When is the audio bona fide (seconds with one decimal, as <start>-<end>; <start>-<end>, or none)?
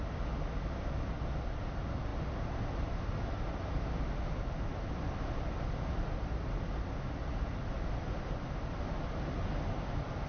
0.0-10.3